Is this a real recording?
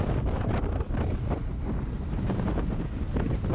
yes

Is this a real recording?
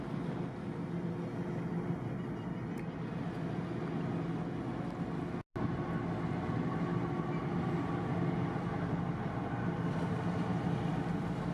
yes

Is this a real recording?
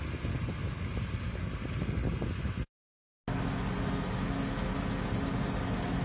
yes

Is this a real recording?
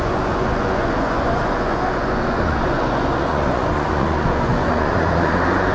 no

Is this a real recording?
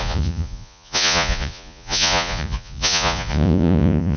no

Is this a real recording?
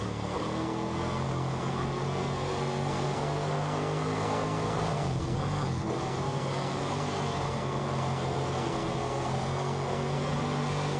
no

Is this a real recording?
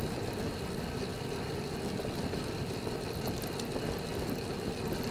yes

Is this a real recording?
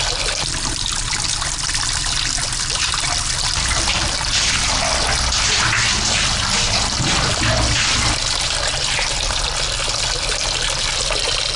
yes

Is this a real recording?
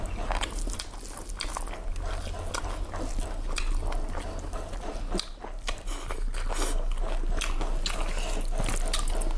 yes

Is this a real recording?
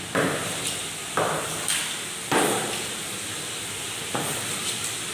yes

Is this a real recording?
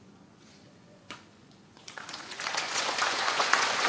no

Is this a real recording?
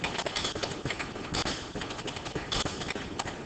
yes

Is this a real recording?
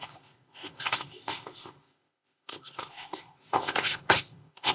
no